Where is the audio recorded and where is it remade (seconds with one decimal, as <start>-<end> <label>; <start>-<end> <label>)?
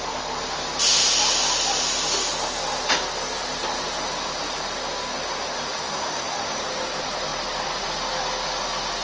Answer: 0.0-9.0 recorded